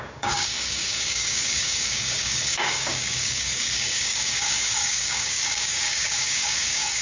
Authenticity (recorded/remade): remade